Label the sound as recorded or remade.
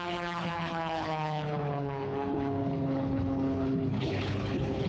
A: remade